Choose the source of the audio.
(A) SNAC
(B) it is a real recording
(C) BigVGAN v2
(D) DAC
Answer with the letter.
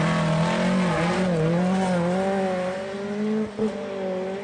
B